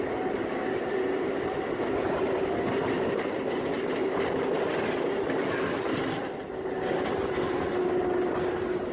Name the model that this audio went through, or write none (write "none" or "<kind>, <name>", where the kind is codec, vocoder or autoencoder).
none